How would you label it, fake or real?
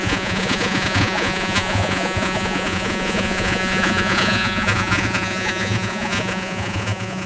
fake